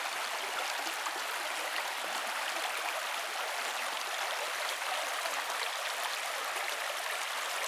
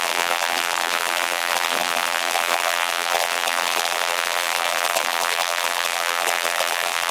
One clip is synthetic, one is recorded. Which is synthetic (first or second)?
second